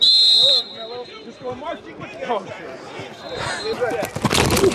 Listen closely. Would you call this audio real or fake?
fake